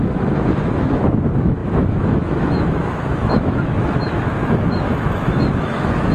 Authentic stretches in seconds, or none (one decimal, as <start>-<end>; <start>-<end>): none